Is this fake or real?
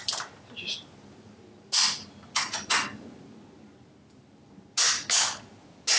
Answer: real